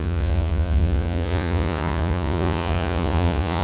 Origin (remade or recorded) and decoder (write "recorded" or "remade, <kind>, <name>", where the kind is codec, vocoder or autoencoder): remade, vocoder, Vocos